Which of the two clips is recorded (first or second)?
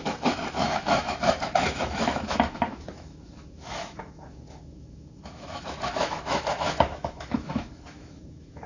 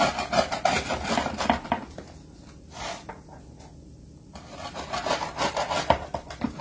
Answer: second